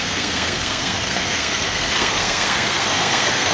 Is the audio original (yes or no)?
no